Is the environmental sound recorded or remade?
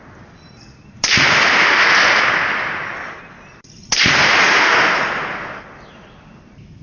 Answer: recorded